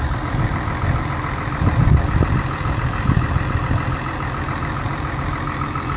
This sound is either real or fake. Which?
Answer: real